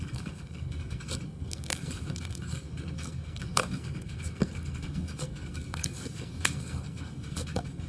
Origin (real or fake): fake